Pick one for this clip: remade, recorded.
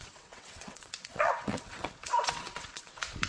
remade